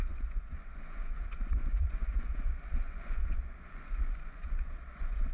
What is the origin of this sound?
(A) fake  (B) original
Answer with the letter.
A